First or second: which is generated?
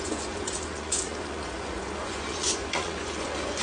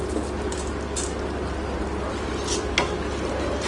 first